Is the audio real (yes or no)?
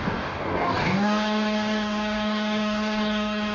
no